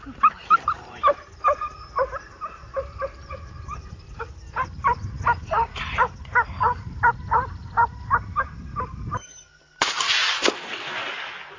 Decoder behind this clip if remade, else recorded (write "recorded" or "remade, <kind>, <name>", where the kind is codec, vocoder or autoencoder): remade, vocoder, BigVGAN v2